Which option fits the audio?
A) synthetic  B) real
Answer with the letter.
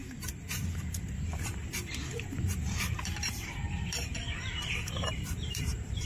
A